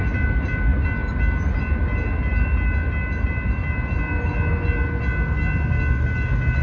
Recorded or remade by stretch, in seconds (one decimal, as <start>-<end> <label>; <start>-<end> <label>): 0.0-6.6 recorded

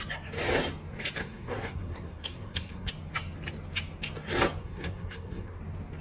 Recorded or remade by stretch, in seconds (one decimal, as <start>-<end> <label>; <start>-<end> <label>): 0.0-1.2 recorded; 1.2-2.9 remade; 2.9-4.6 recorded; 4.6-5.6 remade; 5.6-6.0 recorded

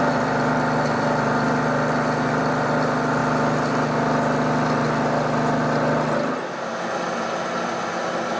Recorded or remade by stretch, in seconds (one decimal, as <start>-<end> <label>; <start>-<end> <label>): 0.0-3.2 remade; 3.2-7.9 recorded; 7.9-8.4 remade

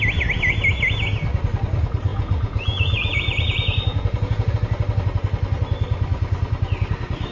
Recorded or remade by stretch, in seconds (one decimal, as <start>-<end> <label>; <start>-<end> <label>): 0.0-2.1 recorded; 2.1-4.5 remade; 4.5-7.3 recorded

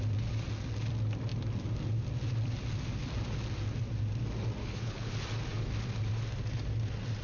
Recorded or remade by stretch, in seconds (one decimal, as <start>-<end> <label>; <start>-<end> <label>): 0.0-4.6 recorded; 4.6-5.1 remade; 5.1-7.2 recorded